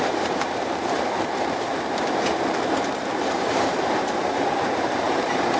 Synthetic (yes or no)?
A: yes